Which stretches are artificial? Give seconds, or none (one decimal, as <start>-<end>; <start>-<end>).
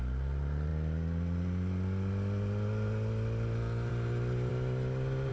none